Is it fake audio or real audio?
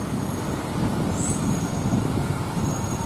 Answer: real